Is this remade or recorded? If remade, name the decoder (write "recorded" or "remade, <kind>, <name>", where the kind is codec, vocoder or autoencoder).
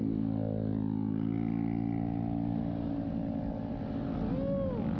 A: recorded